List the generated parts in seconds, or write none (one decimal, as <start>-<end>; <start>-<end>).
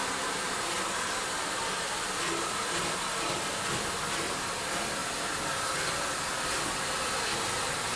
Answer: 0.0-2.4